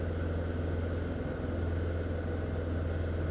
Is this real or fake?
real